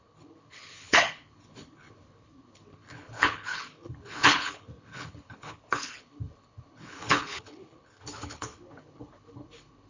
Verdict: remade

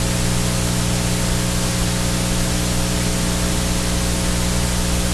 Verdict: recorded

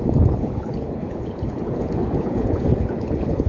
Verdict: remade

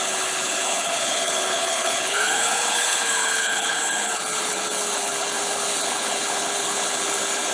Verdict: remade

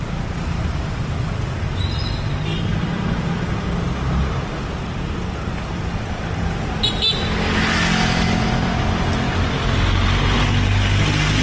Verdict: recorded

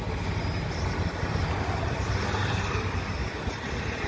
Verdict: recorded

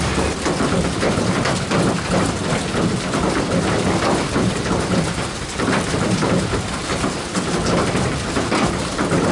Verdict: recorded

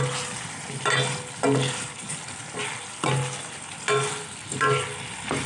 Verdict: recorded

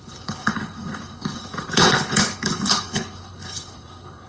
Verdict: remade